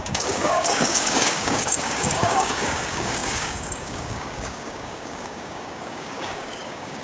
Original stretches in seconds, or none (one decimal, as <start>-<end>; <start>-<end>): none